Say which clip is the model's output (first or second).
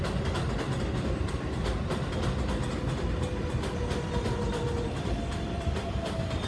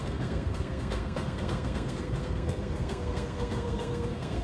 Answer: second